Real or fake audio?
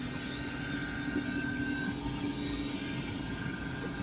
real